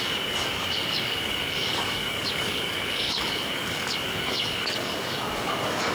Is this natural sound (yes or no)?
no